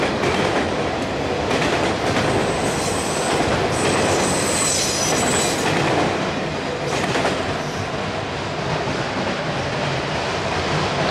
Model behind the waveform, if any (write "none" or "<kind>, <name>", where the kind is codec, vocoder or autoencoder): none